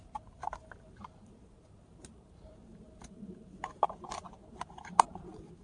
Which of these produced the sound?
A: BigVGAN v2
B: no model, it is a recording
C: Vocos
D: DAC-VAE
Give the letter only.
A